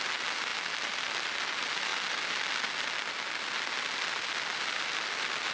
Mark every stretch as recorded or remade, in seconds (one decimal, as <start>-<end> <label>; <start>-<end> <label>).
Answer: 0.0-5.5 recorded